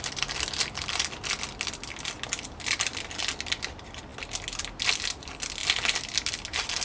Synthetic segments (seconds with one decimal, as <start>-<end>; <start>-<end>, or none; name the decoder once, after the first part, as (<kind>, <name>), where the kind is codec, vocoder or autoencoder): none